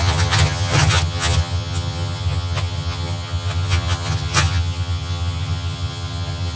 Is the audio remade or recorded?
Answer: remade